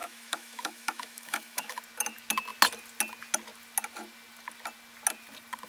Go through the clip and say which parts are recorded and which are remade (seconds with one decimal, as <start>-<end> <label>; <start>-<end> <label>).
0.0-1.8 remade; 1.8-5.7 recorded